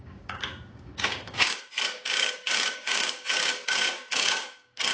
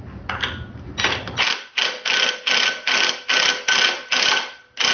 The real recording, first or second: second